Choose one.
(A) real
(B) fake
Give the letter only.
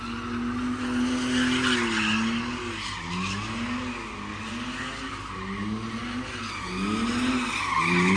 A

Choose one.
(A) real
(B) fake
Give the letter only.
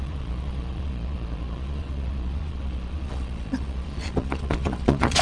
B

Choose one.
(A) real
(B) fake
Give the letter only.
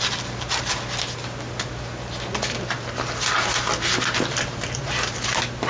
A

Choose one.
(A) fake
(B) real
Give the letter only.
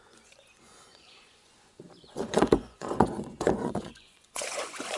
A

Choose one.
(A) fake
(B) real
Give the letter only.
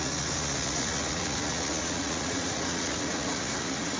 A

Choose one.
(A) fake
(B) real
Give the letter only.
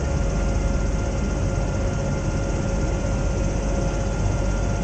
B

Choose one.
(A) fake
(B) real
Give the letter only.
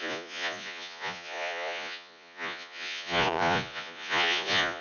A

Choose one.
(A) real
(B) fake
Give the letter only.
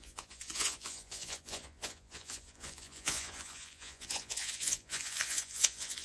B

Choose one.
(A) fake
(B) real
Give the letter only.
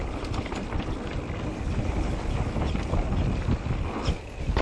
B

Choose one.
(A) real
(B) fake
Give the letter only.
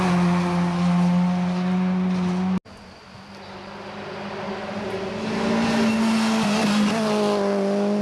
A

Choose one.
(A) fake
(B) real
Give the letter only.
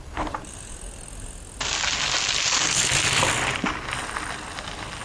B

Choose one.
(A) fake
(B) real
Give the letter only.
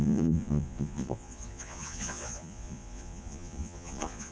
A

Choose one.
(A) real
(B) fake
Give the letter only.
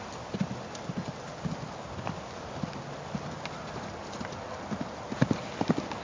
A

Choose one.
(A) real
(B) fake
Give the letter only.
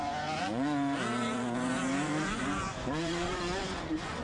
B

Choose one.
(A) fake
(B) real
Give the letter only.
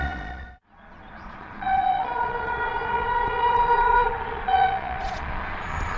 A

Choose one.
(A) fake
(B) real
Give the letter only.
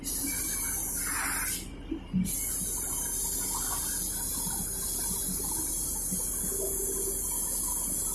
B